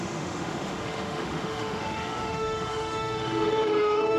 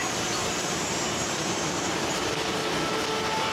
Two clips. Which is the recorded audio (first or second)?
second